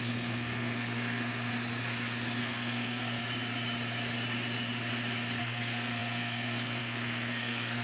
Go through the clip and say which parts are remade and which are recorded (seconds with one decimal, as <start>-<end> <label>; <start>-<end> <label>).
0.0-1.5 remade; 1.5-2.4 recorded; 2.4-3.2 remade; 3.2-5.4 recorded; 5.4-7.8 remade